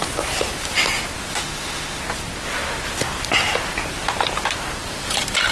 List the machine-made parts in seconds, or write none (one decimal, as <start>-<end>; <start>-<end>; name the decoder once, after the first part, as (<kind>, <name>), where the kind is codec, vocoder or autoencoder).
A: 1.3-2.0 (autoencoder, DAC-VAE)